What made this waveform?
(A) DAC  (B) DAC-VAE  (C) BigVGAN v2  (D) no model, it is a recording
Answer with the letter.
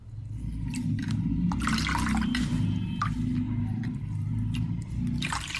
D